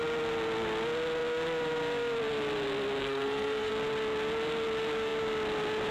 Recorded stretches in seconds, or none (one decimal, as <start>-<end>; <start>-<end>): 0.0-3.0; 3.7-5.9